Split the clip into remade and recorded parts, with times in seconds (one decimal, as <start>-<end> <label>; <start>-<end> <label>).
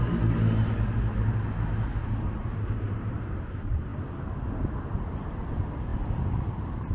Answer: 0.0-2.1 recorded; 2.1-3.9 remade; 3.9-5.5 recorded; 5.5-5.9 remade; 5.9-6.5 recorded; 6.5-6.9 remade